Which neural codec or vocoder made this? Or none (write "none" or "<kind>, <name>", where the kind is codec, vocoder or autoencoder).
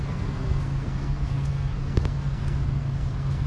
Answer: codec, SNAC